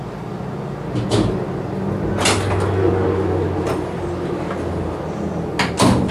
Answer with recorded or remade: recorded